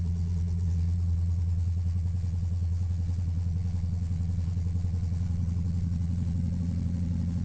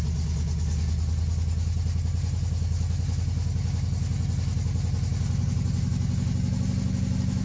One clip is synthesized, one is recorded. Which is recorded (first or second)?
second